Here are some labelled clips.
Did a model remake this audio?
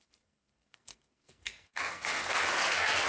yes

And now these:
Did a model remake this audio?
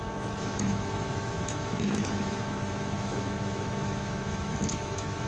yes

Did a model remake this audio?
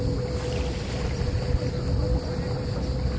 no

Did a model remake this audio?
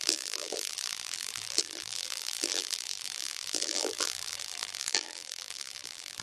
yes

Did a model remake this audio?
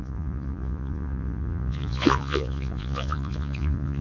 yes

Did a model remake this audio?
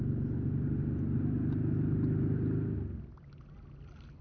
no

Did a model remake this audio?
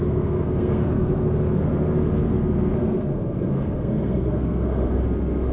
yes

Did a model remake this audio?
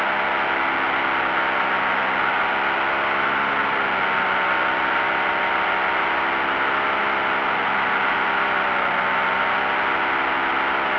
no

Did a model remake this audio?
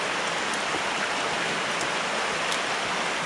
no